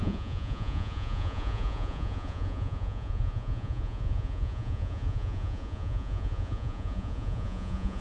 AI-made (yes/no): yes